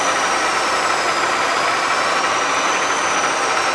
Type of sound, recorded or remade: recorded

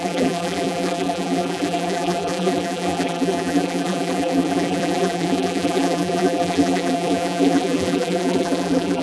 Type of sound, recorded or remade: remade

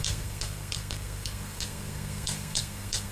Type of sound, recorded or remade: remade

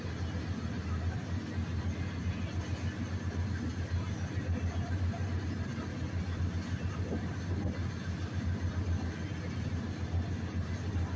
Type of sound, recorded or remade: recorded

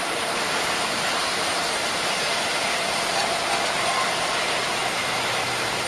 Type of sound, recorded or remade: remade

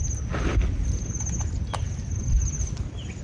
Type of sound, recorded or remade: recorded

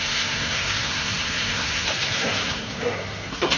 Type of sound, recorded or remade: remade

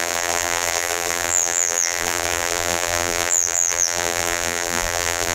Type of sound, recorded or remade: remade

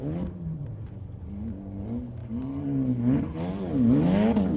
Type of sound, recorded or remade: recorded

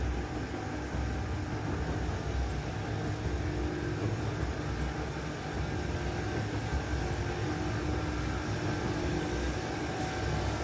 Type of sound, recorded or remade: recorded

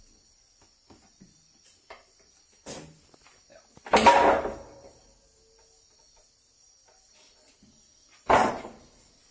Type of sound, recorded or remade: recorded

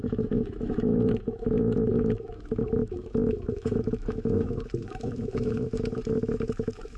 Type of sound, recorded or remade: remade